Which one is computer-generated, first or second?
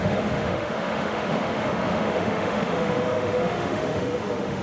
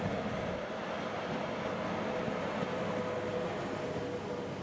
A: first